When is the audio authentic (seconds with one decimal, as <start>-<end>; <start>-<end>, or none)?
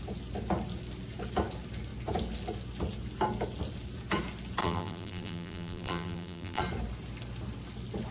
0.0-4.6; 6.6-8.1